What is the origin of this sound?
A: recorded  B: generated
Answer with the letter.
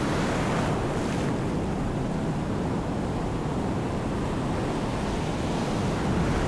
A